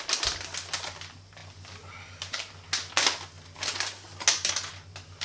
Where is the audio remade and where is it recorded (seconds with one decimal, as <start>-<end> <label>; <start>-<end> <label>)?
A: 0.0-5.2 recorded